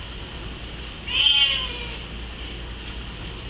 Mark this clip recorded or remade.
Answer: recorded